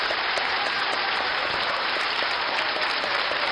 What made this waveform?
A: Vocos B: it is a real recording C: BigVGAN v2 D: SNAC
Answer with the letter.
C